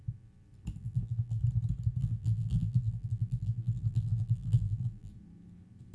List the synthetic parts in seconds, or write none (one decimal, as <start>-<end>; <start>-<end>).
0.8-1.4; 2.0-5.1